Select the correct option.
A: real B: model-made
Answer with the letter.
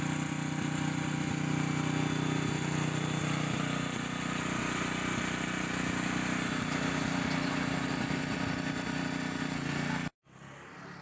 A